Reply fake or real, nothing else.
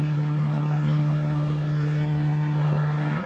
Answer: fake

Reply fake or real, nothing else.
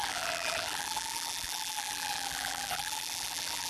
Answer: fake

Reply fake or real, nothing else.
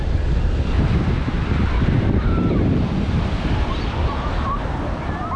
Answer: fake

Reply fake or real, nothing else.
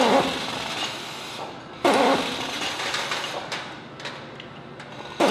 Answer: real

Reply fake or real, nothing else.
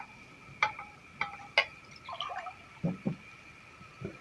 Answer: real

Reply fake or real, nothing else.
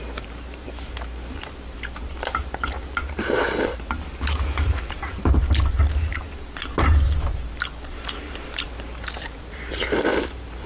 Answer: fake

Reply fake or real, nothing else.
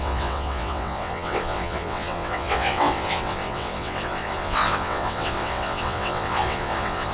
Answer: fake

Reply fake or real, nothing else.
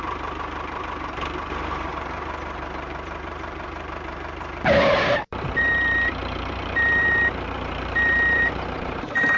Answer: fake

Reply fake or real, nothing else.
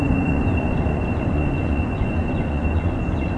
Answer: fake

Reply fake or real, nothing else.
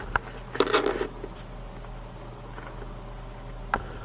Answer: real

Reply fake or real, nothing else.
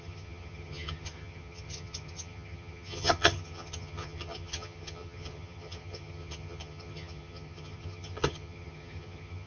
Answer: fake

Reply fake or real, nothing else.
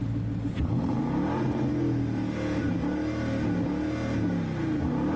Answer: real